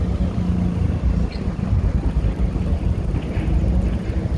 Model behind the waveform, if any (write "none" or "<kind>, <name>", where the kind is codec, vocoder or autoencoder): none